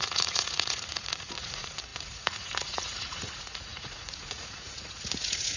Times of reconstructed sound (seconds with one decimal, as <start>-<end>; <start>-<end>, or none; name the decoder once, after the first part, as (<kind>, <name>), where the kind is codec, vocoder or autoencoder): 0.0-5.6 (vocoder, Vocos)